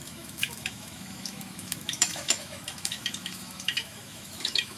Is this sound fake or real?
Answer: fake